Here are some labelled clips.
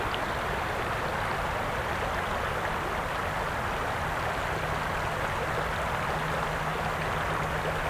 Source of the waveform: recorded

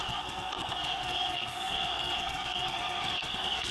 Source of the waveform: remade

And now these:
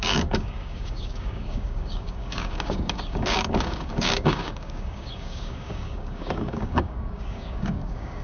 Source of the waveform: remade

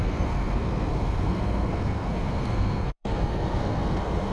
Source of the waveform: remade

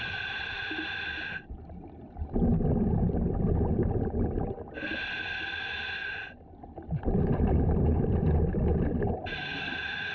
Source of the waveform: recorded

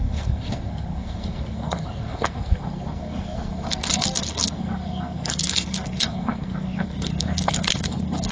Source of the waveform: remade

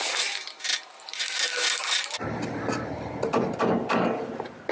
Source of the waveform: recorded